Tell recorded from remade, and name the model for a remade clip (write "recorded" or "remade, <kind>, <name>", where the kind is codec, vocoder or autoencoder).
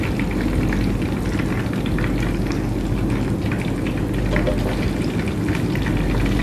recorded